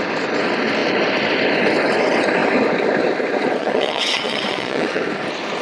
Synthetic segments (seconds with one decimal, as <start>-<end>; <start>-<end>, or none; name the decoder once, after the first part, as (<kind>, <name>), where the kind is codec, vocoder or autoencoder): 3.6-5.0 (vocoder, WaveNeXt)

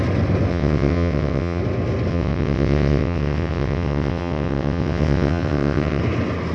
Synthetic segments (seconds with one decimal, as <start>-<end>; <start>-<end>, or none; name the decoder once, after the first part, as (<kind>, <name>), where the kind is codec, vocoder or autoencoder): 0.5-1.6 (vocoder, WaveNeXt); 2.1-6.0

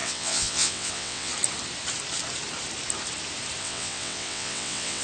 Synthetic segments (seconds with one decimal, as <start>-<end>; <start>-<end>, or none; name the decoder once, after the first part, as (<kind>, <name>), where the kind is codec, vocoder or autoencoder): 0.0-1.3 (vocoder, WaveNeXt); 3.6-5.0

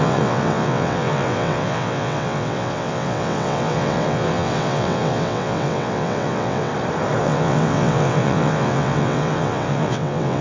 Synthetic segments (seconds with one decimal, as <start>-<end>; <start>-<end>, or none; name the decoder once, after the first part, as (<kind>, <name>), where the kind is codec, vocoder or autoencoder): 0.0-6.7 (vocoder, WaveNeXt); 7.2-10.4